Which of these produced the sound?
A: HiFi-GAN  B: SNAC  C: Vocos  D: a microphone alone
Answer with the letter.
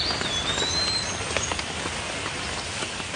D